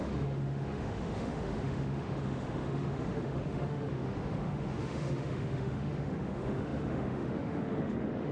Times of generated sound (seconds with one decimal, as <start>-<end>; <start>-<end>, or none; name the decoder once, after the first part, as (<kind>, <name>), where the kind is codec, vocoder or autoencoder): 0.0-8.3 (autoencoder, DAC-VAE)